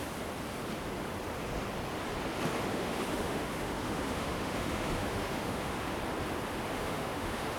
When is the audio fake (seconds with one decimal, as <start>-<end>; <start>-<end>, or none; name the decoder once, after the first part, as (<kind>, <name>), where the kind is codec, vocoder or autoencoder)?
2.7-6.0 (autoencoder, DAC-VAE); 6.7-7.6